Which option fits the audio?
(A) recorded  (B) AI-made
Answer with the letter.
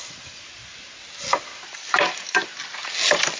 A